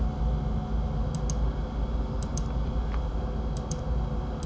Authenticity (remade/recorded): recorded